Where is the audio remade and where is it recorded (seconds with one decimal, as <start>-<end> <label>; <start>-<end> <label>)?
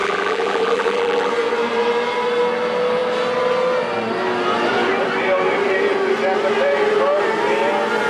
0.0-1.3 remade; 1.3-8.1 recorded